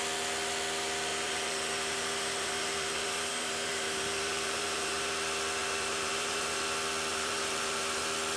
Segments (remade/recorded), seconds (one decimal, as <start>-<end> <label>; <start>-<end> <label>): 0.0-1.1 recorded; 1.1-5.1 remade; 5.1-5.6 recorded; 5.6-6.6 remade; 6.6-7.1 recorded; 7.1-8.0 remade; 8.0-8.4 recorded